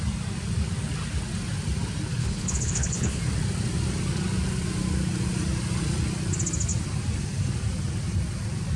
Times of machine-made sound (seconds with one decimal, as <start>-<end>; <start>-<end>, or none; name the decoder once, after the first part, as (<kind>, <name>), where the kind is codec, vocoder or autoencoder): 2.2-3.2 (codec, HILCodec)